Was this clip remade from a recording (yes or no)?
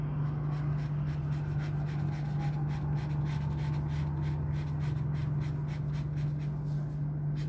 no